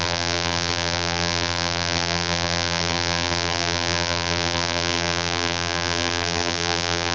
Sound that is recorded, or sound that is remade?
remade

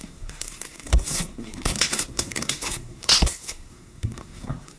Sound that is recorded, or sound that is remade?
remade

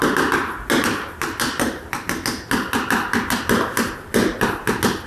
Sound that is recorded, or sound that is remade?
recorded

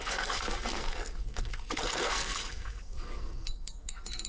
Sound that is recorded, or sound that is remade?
remade